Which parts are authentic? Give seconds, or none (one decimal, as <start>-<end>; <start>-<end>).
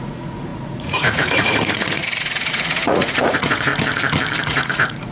3.7-4.4